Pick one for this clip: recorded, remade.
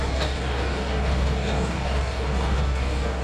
remade